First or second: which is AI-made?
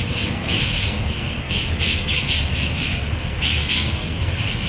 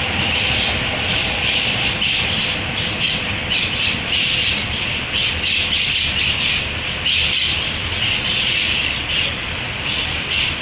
first